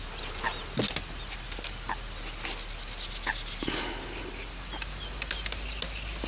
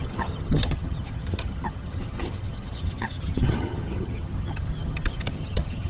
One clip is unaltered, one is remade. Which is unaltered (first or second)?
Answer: first